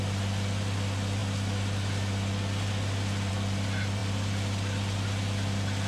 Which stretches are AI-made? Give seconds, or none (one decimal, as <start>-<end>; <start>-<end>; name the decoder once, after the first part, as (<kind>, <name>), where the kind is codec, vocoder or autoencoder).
none